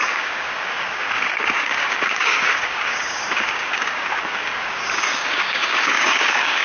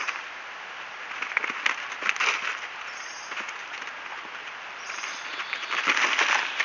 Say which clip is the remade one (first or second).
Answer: first